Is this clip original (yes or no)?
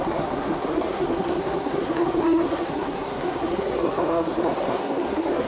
no